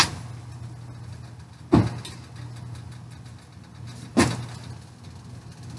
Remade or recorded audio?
recorded